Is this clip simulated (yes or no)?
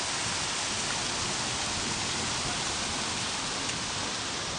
no